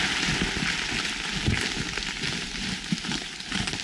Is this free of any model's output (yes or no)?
yes